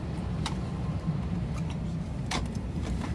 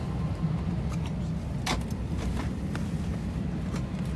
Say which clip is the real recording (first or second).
second